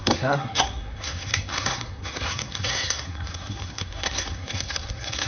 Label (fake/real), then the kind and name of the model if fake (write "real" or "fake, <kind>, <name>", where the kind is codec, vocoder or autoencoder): fake, codec, SNAC